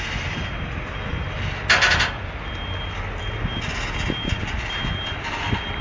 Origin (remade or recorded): recorded